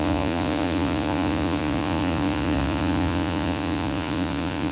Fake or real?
fake